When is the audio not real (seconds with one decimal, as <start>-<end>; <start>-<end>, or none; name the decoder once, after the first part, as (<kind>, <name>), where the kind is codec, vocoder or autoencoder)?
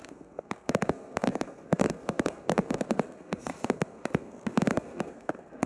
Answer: 0.0-5.7 (codec, SNAC)